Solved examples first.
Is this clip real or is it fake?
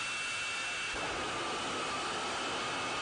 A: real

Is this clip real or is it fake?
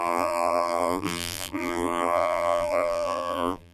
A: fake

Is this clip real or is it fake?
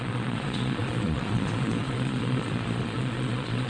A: fake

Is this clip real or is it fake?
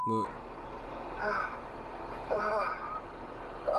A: real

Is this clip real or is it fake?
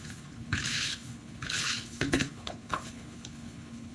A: fake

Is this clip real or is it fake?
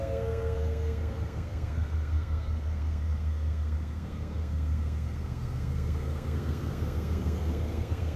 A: fake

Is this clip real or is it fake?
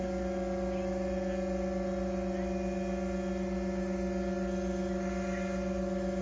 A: real